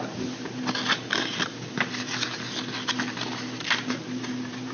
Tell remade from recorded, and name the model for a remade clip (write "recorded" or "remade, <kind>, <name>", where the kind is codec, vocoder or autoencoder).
recorded